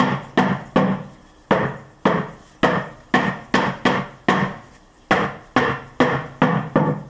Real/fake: real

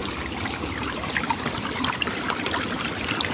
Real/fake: fake